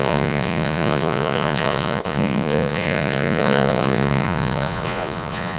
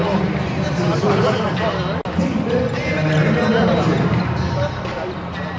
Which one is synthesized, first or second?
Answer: first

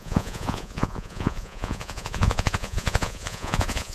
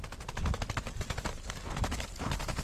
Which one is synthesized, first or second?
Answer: first